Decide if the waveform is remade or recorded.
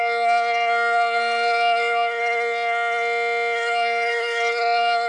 remade